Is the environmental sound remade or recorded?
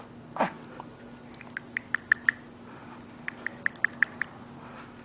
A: recorded